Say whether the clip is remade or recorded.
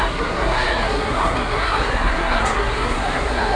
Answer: remade